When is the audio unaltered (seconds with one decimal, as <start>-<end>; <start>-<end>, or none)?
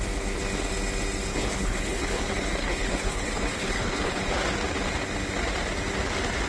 0.0-1.3; 2.2-2.6; 4.2-6.5